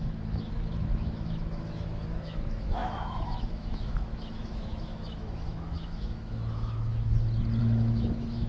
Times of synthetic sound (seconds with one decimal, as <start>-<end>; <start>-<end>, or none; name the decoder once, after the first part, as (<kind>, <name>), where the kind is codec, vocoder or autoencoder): 0.0-7.1 (autoencoder, DAC-VAE); 7.6-8.5